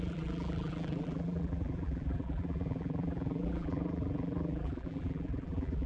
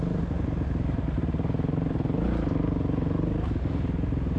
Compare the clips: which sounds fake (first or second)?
first